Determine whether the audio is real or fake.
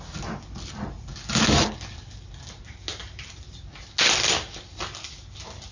real